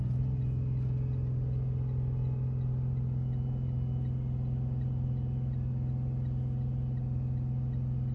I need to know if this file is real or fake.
real